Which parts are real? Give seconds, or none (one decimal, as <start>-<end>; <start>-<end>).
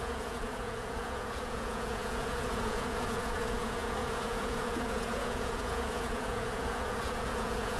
none